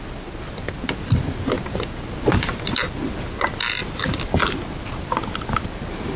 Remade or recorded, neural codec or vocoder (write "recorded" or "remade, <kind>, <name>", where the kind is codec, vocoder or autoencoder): recorded